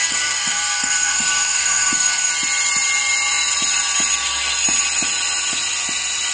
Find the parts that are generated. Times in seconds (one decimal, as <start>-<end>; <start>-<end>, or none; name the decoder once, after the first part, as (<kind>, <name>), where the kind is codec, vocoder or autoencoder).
0.0-2.3 (codec, SNAC)